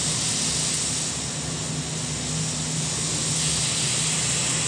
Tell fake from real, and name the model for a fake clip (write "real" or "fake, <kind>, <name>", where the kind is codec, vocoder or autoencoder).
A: real